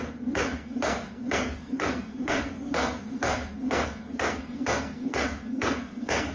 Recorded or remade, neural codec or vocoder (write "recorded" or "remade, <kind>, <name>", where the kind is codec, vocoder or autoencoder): remade, codec, SNAC